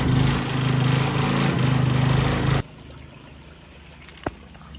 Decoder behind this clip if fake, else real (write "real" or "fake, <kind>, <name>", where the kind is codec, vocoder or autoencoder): real